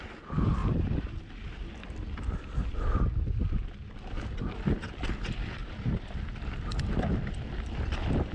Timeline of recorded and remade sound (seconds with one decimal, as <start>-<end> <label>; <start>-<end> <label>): 0.0-0.6 recorded; 0.6-1.7 remade; 1.7-5.6 recorded; 5.6-6.2 remade; 6.2-8.3 recorded